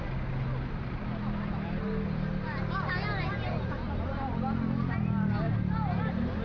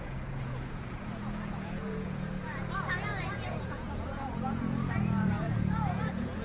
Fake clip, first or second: second